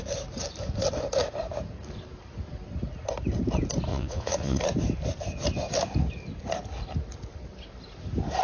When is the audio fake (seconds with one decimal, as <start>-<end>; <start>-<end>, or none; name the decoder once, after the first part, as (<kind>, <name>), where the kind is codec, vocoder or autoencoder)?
3.9-4.6 (vocoder, Vocos)